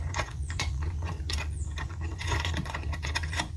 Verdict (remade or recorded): remade